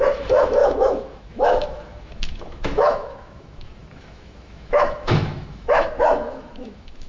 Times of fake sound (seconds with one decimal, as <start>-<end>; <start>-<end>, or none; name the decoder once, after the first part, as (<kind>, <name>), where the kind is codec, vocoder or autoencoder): 0.0-7.1 (autoencoder, DAC-VAE)